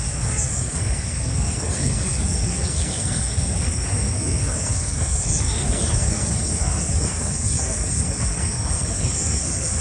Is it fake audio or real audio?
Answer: fake